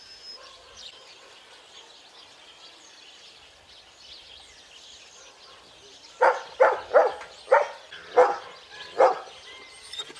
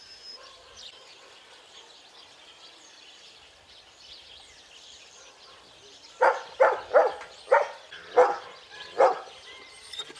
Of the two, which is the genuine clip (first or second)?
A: first